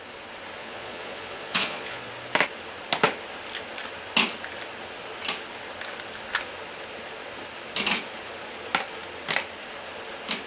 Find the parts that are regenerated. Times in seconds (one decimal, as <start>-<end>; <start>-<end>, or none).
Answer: 0.6-2.1

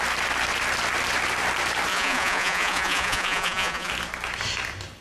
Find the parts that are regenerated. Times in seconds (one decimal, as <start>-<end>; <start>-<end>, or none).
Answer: 1.9-3.9

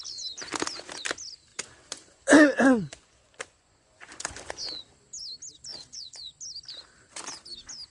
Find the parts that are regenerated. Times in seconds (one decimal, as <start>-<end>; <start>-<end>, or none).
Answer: 1.5-4.8; 5.7-6.4

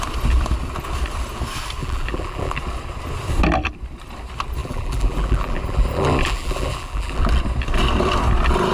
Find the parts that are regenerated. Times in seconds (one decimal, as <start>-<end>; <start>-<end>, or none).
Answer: 1.8-2.6; 4.6-7.3

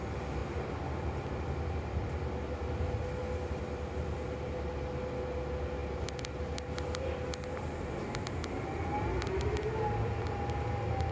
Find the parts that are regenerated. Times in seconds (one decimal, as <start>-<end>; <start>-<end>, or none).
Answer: none

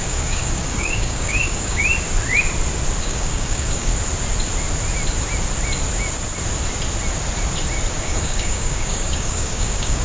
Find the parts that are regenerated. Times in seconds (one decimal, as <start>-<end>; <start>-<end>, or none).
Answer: 0.0-1.8; 3.0-3.9; 8.0-10.0

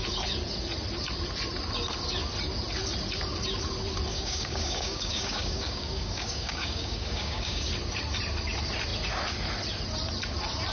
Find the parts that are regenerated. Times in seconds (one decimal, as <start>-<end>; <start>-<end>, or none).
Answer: 4.1-7.7

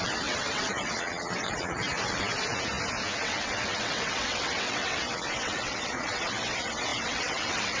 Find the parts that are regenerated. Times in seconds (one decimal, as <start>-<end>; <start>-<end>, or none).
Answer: 0.0-2.3; 3.2-7.8